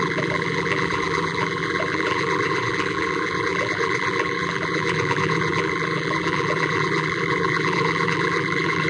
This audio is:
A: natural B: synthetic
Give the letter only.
B